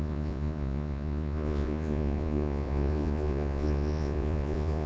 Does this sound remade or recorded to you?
remade